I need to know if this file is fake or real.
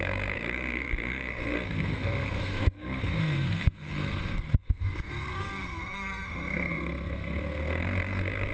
fake